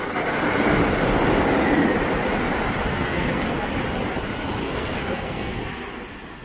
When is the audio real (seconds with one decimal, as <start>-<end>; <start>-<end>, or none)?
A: 0.0-2.9; 3.7-4.6; 5.6-6.4